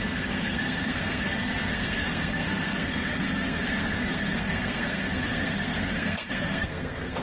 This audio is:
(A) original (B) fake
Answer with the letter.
B